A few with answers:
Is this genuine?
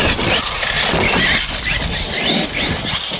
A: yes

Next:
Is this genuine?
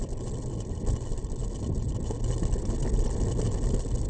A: yes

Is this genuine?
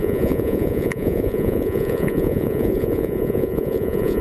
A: no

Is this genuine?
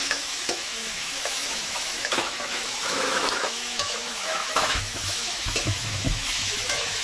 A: no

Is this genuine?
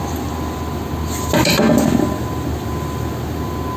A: yes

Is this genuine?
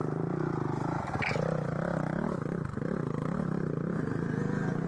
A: yes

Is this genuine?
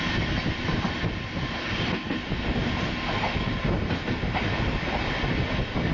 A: yes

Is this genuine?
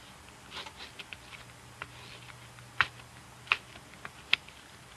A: yes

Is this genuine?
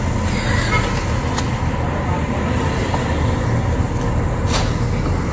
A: yes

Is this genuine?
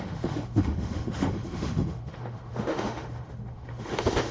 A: no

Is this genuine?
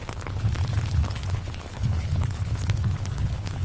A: no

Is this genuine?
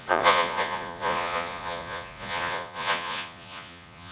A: no